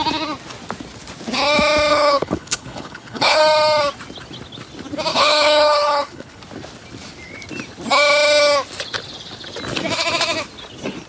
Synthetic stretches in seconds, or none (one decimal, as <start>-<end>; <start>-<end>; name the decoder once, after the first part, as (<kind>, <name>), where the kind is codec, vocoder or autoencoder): 1.9-3.4 (codec, HILCodec); 5.1-6.4